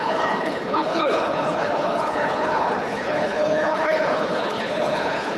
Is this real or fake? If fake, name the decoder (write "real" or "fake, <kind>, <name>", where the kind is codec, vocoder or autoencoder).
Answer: fake, codec, HILCodec